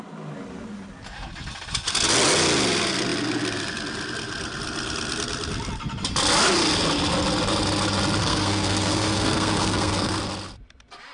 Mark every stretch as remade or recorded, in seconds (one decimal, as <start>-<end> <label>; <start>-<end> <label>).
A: 0.0-8.2 recorded; 8.2-10.2 remade; 10.2-11.1 recorded